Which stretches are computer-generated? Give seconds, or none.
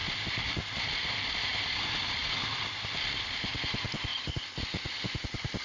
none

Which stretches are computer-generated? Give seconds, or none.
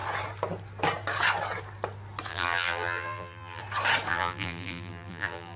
2.3-3.6 (vocoder, BigVGAN v2); 4.1-5.6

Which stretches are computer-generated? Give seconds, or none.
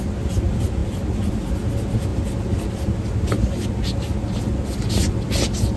none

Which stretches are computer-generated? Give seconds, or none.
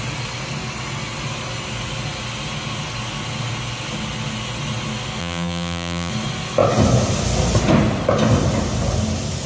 5.2-6.1 (vocoder, BigVGAN v2)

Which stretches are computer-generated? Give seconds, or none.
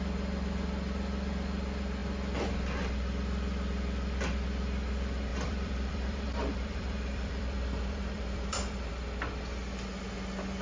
5.3-8.9 (vocoder, BigVGAN v2)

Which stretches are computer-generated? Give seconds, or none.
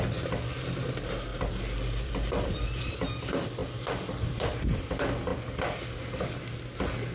1.3-2.9 (vocoder, BigVGAN v2); 3.6-4.6